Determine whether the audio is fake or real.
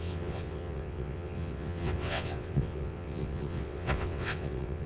fake